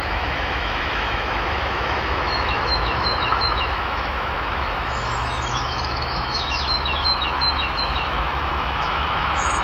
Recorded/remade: remade